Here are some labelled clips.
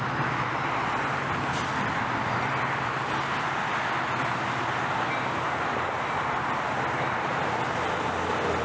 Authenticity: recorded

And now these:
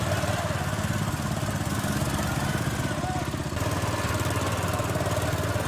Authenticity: recorded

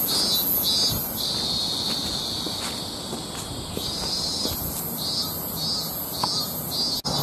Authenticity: recorded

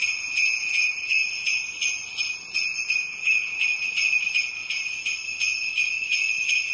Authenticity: recorded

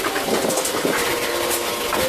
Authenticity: recorded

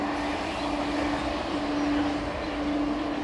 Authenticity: recorded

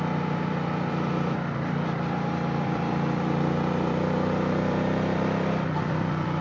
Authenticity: remade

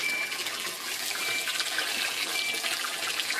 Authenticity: remade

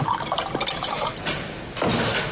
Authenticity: recorded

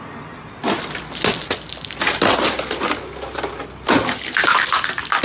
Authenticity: recorded